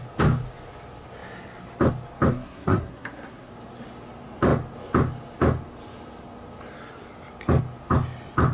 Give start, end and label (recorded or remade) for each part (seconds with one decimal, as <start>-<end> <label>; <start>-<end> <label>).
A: 0.0-2.3 recorded; 2.3-3.5 remade; 3.5-8.5 recorded